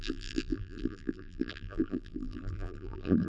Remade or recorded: remade